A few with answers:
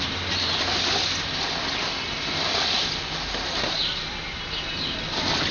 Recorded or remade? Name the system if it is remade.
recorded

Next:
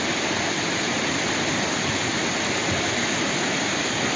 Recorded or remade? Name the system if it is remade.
recorded